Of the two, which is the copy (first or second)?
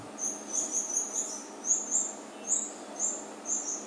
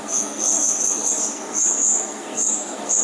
second